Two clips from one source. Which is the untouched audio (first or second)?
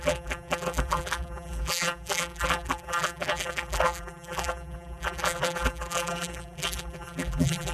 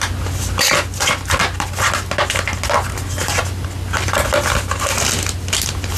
second